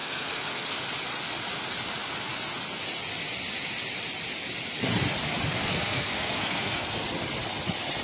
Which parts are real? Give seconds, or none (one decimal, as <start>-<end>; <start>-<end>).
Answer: 0.8-5.5; 7.0-8.0